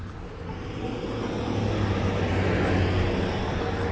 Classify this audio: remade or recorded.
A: recorded